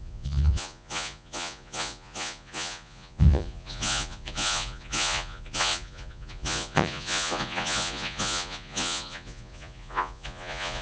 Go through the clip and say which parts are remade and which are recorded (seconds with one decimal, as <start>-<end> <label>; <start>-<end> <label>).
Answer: 0.0-10.8 remade